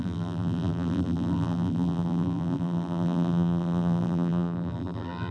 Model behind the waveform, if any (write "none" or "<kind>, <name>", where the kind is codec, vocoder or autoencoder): vocoder, BigVGAN v2